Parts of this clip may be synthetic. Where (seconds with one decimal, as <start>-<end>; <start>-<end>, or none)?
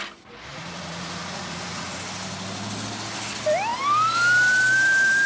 0.5-2.0